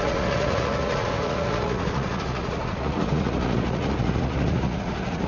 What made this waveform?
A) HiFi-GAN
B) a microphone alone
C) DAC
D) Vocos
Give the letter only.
D